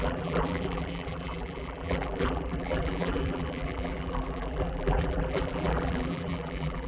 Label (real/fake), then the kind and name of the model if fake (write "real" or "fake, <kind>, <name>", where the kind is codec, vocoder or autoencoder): fake, vocoder, BigVGAN v2